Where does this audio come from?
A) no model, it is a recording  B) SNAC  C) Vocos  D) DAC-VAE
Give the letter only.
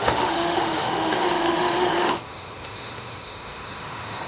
D